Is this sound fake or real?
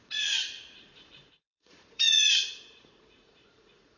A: fake